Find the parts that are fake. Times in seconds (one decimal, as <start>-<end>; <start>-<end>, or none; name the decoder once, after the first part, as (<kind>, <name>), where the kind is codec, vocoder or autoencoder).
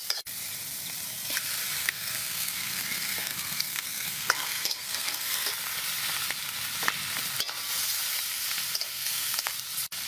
1.8-5.5 (codec, SNAC); 8.9-9.5